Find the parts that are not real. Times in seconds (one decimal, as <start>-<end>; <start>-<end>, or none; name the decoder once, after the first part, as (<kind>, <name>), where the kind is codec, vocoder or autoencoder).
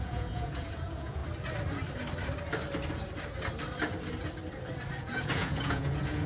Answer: 0.0-1.2 (vocoder, Vocos); 5.0-6.3